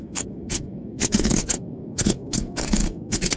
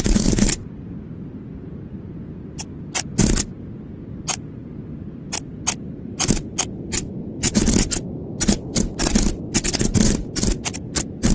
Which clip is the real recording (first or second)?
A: second